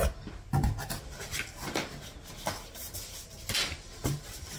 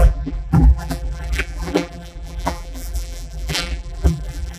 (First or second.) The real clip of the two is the first